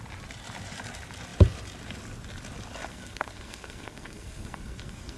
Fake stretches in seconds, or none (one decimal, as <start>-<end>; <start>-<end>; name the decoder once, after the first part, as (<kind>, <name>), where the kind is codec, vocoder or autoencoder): 2.9-5.2 (codec, SNAC)